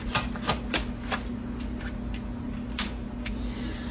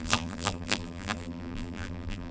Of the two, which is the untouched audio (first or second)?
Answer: first